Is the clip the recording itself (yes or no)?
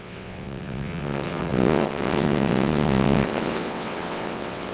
no